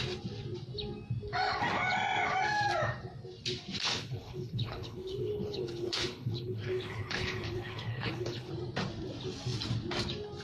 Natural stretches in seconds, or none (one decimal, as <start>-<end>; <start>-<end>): 0.0-3.8; 8.5-10.4